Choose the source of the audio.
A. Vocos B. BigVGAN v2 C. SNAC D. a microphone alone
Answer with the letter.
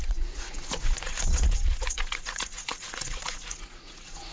A